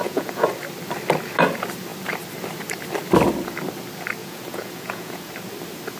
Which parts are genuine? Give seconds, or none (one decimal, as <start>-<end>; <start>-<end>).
0.5-4.2; 5.3-6.0